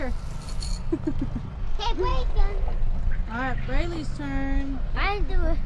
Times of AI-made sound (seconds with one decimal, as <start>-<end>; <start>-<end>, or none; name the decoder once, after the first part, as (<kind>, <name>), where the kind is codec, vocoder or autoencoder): none